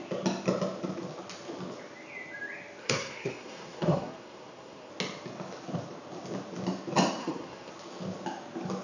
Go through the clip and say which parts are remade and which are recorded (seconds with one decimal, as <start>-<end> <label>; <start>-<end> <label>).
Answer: 0.0-2.8 recorded; 2.8-4.9 remade; 4.9-7.2 recorded; 7.2-7.7 remade; 7.7-8.8 recorded